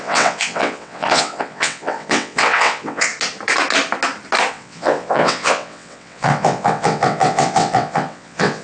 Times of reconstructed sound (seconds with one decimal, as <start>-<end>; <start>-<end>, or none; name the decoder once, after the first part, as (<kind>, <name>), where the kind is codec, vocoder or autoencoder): 0.0-3.1 (vocoder, WaveNeXt); 4.5-8.6